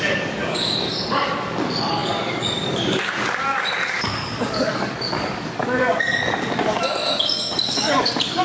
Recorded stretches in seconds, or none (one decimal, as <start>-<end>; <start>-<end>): none